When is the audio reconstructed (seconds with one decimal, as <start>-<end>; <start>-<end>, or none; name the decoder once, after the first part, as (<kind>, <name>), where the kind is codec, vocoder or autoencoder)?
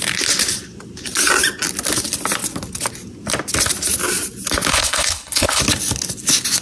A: 4.7-5.6 (codec, HILCodec)